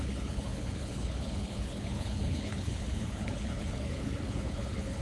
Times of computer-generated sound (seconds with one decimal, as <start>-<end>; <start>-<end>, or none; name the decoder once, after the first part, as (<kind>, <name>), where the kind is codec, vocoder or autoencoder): 0.0-5.0 (codec, HILCodec)